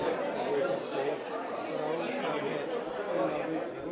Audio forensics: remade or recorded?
recorded